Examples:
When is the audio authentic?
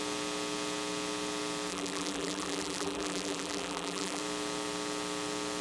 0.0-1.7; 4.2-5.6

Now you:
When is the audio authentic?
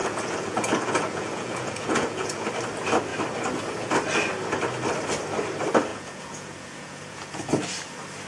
2.5-5.9; 7.5-8.3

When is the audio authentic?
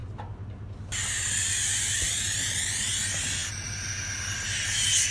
0.0-5.1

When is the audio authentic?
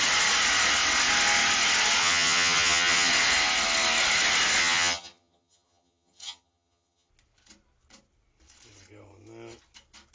0.0-2.0; 3.1-4.6; 7.1-10.1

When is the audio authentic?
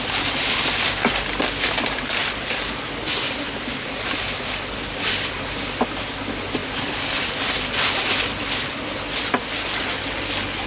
0.0-2.2; 2.8-10.7